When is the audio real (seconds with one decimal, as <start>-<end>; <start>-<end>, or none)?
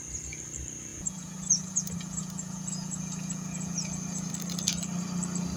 0.0-0.9; 4.3-5.6